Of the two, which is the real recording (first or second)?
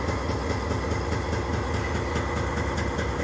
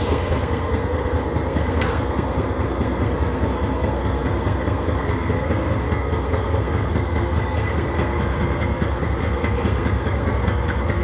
first